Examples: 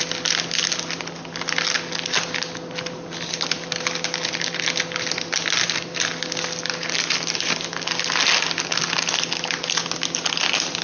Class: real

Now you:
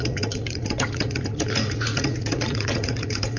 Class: fake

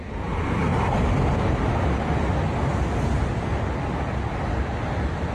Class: real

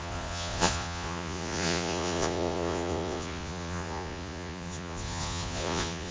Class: fake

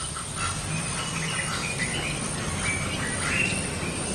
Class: real